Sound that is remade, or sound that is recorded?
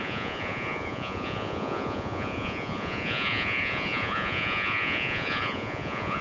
remade